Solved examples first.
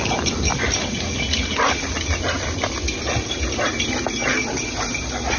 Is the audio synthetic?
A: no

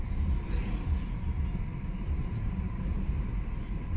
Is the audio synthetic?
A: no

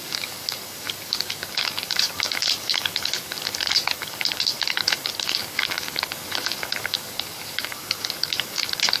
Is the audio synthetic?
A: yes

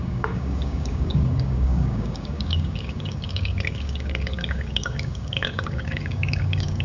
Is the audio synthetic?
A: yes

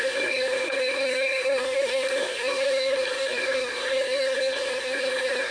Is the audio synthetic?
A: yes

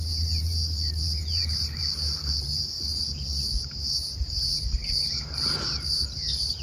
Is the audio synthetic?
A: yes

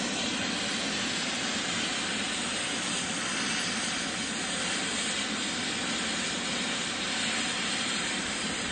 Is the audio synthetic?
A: no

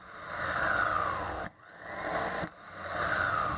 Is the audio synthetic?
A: no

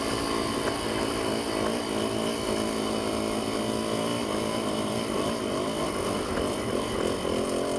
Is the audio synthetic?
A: no